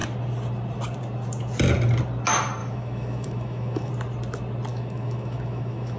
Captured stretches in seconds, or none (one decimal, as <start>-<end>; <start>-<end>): 0.0-2.6; 3.9-4.7